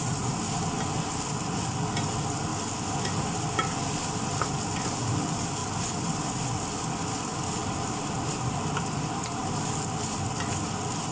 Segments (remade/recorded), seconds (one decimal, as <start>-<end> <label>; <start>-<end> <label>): 0.0-11.1 recorded